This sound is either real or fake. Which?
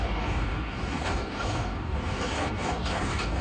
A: fake